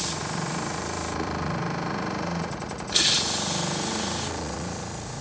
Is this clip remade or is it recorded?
remade